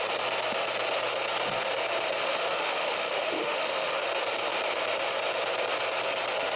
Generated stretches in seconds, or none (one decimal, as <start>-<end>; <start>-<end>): 2.2-4.0